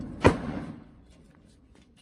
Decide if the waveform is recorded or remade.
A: remade